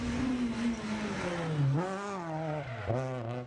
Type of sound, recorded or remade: recorded